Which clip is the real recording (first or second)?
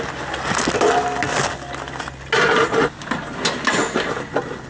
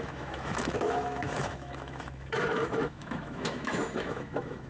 first